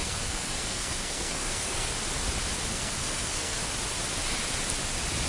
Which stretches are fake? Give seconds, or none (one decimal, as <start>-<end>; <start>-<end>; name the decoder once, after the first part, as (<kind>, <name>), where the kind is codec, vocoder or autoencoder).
0.0-1.9 (codec, SNAC); 2.7-3.6